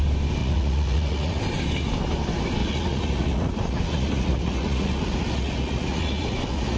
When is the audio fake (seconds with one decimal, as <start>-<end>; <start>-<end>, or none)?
0.4-1.4; 2.6-6.8